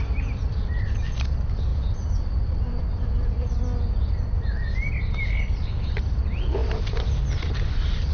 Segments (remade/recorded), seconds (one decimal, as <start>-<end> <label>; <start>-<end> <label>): 0.0-8.1 recorded

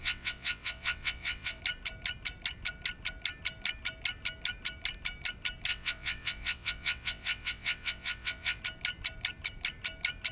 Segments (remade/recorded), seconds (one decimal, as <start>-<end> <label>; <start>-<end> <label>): 0.0-1.6 remade; 1.6-5.7 recorded; 5.7-8.6 remade; 8.6-10.3 recorded

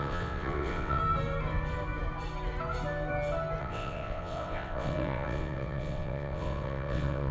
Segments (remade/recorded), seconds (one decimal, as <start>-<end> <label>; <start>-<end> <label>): 0.0-1.0 remade; 1.0-3.6 recorded; 3.6-7.3 remade